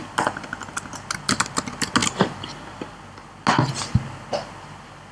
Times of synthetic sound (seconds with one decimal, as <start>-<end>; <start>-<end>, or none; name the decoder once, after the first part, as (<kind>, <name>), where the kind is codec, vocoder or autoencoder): none